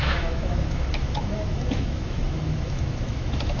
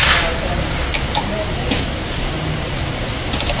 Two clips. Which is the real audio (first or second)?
second